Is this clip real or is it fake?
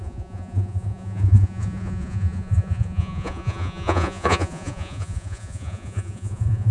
fake